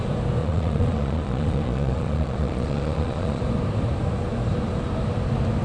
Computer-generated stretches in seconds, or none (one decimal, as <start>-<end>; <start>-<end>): 0.4-3.4